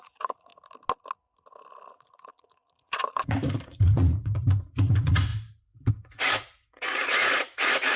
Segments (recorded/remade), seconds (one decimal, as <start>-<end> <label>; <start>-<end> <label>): 0.0-0.5 remade; 0.5-1.9 recorded; 1.9-5.3 remade; 5.3-5.9 recorded; 5.9-8.0 remade